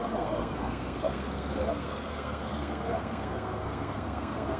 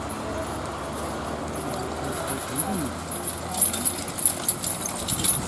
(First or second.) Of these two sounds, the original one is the second